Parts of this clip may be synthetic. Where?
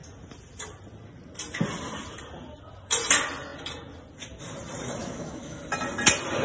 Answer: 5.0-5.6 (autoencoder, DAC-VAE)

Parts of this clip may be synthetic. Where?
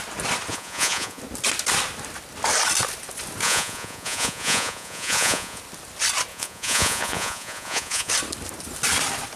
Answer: 0.5-1.2 (vocoder, Vocos); 3.4-5.6; 6.3-8.1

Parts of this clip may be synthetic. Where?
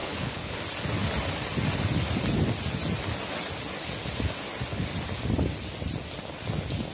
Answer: 0.0-0.6 (codec, HILCodec)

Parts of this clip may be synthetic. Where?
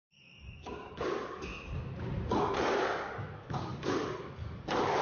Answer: 0.0-1.5 (codec, DAC); 3.2-5.0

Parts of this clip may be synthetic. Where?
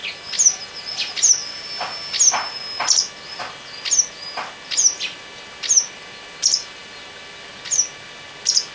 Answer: none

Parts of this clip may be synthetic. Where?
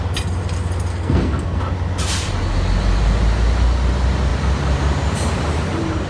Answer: 0.9-1.6 (codec, SNAC)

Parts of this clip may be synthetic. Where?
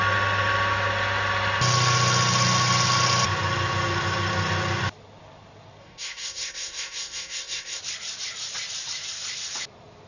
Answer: 5.8-7.8 (codec, SNAC)